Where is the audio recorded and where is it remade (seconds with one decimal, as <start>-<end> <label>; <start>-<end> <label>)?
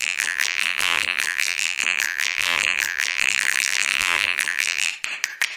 0.0-4.9 remade; 4.9-5.6 recorded